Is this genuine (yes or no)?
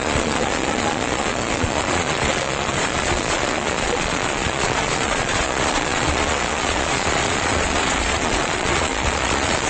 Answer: no